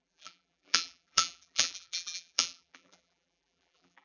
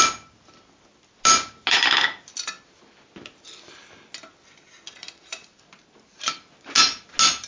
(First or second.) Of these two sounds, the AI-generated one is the first